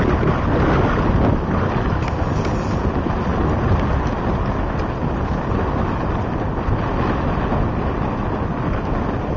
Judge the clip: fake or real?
real